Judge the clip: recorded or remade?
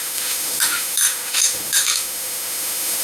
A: remade